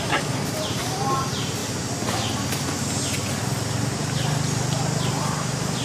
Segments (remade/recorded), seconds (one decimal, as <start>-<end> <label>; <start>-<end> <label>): 0.0-1.6 remade; 1.6-5.1 recorded; 5.1-5.8 remade